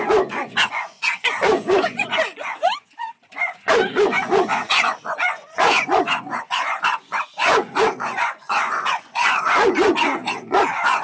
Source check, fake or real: fake